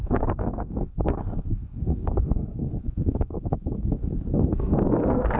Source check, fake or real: fake